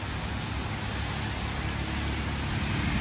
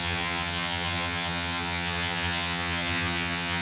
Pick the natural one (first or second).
first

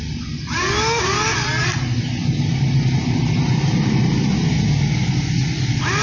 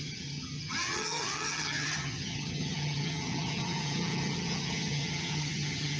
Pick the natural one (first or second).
first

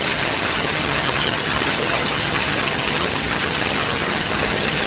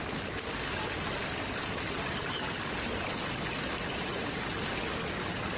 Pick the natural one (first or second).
second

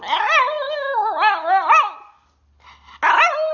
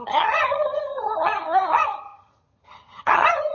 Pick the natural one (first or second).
first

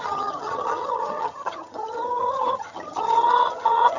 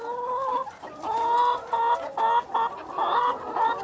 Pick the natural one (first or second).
second